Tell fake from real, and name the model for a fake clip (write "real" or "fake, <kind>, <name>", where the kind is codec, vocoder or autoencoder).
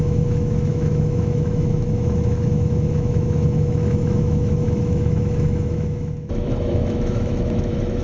fake, autoencoder, DAC-VAE